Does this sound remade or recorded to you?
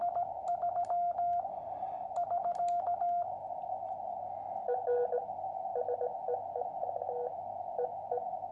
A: recorded